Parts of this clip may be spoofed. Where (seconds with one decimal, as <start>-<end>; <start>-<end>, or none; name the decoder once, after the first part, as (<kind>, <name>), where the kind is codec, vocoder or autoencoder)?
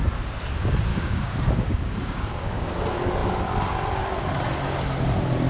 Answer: 0.9-2.8 (codec, DAC)